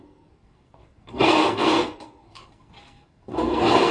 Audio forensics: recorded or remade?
remade